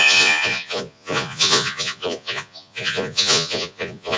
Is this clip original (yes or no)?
no